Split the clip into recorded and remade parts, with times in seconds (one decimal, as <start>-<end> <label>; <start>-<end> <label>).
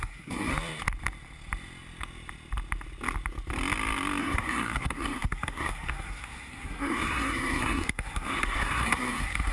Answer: 0.0-0.5 remade; 0.5-4.2 recorded; 4.2-9.5 remade